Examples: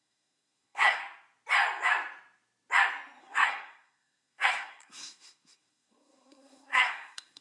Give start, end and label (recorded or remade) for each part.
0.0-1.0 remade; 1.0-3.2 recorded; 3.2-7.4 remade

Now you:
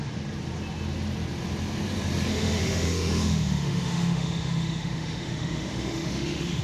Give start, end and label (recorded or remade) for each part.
0.0-2.3 recorded; 2.3-6.6 remade

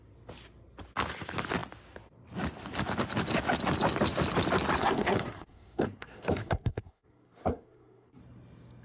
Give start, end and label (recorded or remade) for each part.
0.0-4.8 recorded; 4.8-8.2 remade; 8.2-8.8 recorded

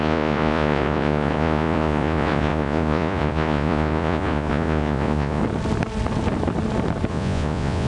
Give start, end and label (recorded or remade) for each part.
0.0-5.4 remade; 5.4-7.1 recorded; 7.1-7.9 remade

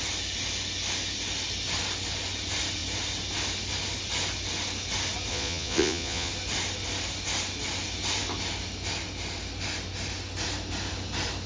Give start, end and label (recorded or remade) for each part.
0.0-5.3 recorded; 5.3-6.3 remade; 6.3-11.5 recorded

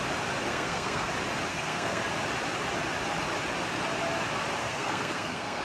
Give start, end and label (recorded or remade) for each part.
0.0-0.5 recorded; 0.5-1.1 remade; 1.1-1.5 recorded; 1.5-2.0 remade; 2.0-4.6 recorded; 4.6-5.6 remade